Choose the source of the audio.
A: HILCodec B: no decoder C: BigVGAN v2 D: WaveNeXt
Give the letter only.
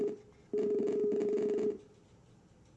B